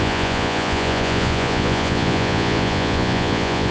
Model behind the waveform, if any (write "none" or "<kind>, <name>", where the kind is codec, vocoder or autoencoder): vocoder, Vocos